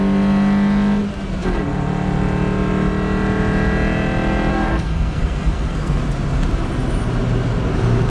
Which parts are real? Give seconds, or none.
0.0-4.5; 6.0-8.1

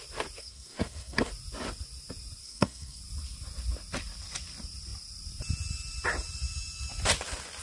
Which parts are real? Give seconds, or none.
0.0-0.4; 1.3-2.4; 3.0-7.6

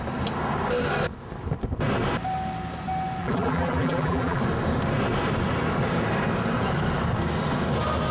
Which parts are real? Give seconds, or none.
0.0-3.2; 4.4-8.1

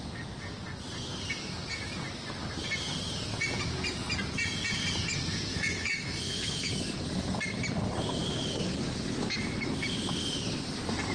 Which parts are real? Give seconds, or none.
0.0-5.5; 6.8-11.1

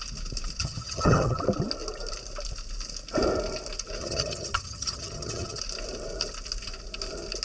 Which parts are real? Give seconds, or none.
0.0-0.6; 1.4-4.0; 5.6-7.4